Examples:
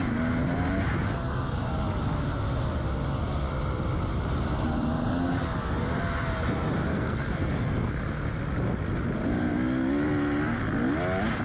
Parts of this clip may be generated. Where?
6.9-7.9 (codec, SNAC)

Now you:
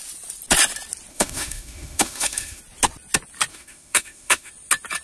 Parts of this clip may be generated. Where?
1.1-2.6 (autoencoder, DAC-VAE); 3.5-4.5

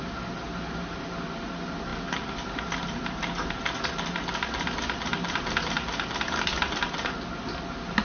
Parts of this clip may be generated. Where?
none

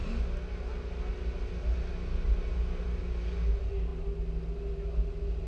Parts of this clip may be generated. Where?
none

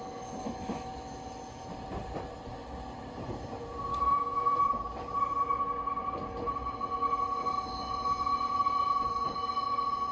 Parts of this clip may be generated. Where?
0.4-0.9 (autoencoder, DAC-VAE); 3.9-4.6